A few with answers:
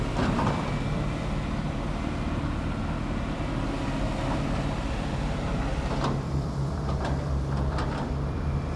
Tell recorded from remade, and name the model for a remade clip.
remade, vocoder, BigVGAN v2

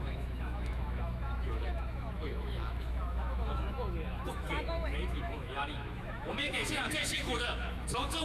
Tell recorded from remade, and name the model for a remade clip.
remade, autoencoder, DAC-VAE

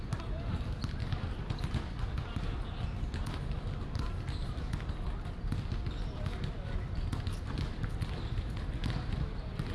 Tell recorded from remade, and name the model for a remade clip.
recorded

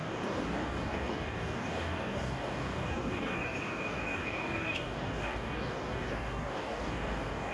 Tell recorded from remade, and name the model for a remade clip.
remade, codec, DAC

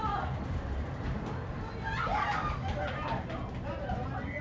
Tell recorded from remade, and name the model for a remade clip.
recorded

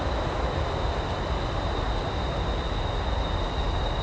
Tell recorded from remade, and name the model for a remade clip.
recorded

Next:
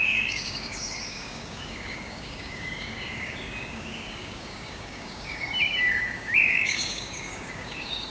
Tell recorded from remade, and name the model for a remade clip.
remade, codec, DAC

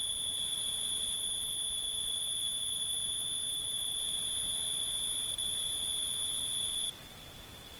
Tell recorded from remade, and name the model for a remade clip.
remade, vocoder, BigVGAN v2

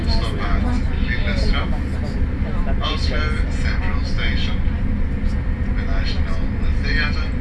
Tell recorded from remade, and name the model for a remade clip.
recorded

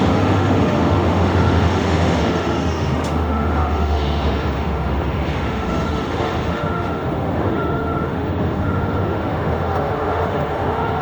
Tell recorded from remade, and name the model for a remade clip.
remade, autoencoder, DAC-VAE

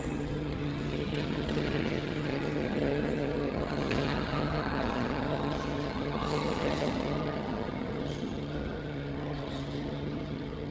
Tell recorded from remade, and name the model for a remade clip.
remade, vocoder, HiFi-GAN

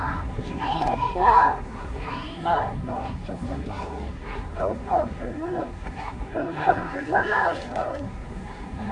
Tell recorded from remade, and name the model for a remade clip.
remade, codec, SNAC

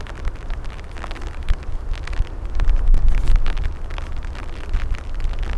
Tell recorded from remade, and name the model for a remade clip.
remade, vocoder, BigVGAN v2